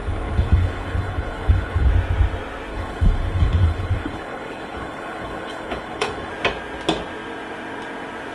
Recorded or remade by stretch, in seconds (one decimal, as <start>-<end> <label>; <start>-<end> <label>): 0.0-1.9 remade; 1.9-2.7 recorded; 2.7-6.3 remade; 6.3-8.3 recorded